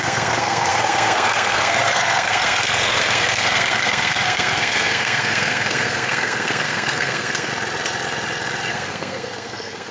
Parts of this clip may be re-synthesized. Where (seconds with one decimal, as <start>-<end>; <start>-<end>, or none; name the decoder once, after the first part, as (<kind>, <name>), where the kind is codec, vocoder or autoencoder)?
0.0-7.5 (codec, SNAC); 8.7-9.9